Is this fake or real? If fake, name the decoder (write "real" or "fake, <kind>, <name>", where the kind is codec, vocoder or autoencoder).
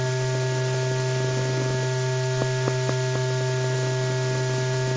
real